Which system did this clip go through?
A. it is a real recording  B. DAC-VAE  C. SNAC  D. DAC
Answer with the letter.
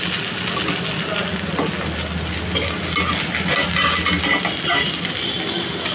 A